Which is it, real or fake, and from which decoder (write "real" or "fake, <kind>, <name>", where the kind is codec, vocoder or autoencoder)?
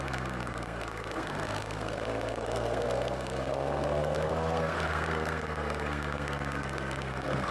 fake, codec, SNAC